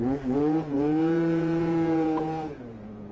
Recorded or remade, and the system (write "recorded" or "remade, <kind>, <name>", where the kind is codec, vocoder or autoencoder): remade, vocoder, Vocos